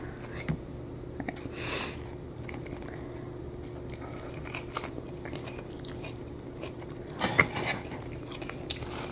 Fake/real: real